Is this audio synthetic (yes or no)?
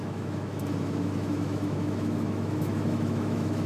yes